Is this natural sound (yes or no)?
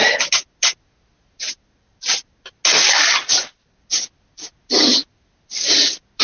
yes